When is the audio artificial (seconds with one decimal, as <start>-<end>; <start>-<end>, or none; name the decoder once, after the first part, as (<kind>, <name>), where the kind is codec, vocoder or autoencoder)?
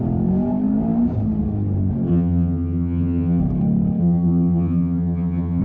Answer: 2.1-3.4 (vocoder, HiFi-GAN); 4.0-5.6